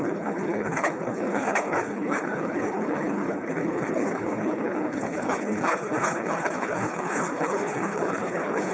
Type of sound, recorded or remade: remade